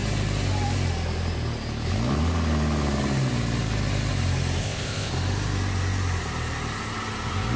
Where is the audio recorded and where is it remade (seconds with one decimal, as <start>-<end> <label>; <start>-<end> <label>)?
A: 0.0-4.6 recorded; 4.6-5.1 remade; 5.1-7.6 recorded